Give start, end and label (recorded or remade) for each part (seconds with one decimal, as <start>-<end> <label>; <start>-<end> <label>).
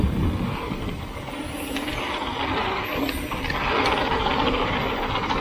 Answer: 0.0-5.4 recorded